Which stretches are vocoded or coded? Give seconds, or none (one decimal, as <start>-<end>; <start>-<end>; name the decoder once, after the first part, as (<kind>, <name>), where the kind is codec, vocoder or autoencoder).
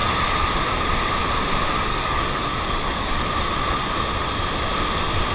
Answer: 1.9-3.3 (codec, DAC)